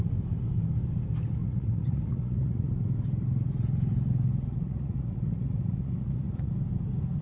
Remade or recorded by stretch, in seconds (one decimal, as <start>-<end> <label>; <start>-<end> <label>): 0.0-1.4 recorded; 1.4-2.7 remade; 2.7-4.5 recorded; 4.5-6.5 remade; 6.5-7.2 recorded

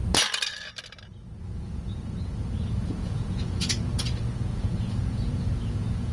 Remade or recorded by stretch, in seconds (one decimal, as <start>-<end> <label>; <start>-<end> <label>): 0.0-1.4 recorded; 1.4-6.1 remade

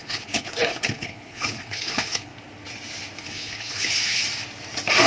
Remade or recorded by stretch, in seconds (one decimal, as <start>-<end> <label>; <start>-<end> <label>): 0.0-2.3 remade; 2.3-3.2 recorded; 3.2-4.2 remade; 4.2-5.1 recorded